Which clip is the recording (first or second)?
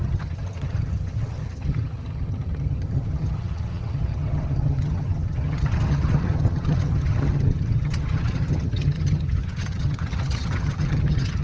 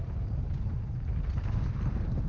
second